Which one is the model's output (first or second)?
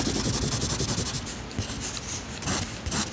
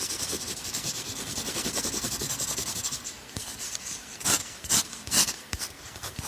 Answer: second